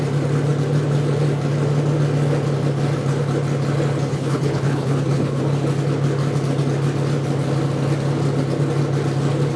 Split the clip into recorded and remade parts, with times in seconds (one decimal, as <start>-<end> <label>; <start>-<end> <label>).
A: 0.0-4.1 recorded; 4.1-5.4 remade; 5.4-9.6 recorded